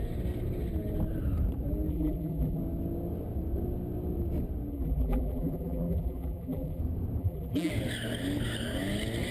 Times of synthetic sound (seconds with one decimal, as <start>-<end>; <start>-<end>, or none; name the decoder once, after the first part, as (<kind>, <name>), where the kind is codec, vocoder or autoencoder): 1.9-2.6 (vocoder, BigVGAN v2); 4.7-6.8; 7.2-7.7